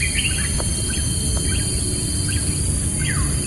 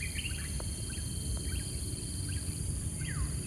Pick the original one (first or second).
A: first